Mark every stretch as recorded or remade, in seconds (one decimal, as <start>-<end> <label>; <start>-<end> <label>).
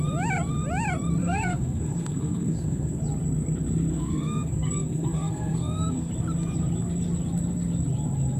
0.0-1.2 recorded; 1.2-3.0 remade; 3.0-3.9 recorded; 3.9-6.1 remade; 6.1-8.4 recorded